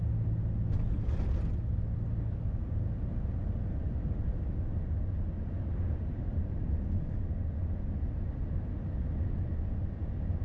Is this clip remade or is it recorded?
recorded